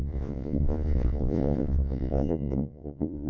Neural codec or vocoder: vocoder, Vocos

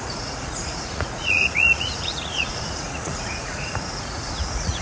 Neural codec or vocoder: vocoder, Vocos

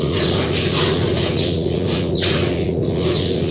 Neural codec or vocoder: vocoder, Vocos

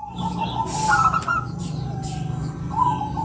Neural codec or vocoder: none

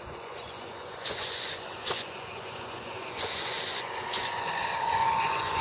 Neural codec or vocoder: vocoder, Vocos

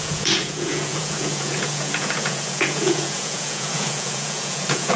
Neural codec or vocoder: vocoder, Vocos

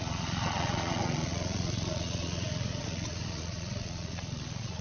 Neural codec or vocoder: vocoder, Vocos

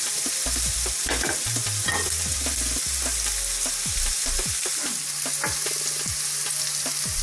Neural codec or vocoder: none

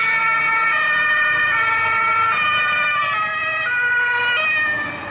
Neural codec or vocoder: none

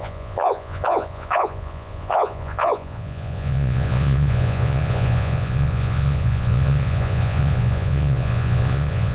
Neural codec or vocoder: vocoder, Vocos